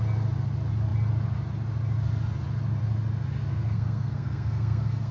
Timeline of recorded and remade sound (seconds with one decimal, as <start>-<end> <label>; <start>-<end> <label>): 0.0-3.5 recorded; 3.5-5.1 remade